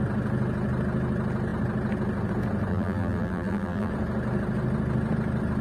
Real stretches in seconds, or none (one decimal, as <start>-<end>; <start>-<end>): 0.0-2.7; 3.9-5.6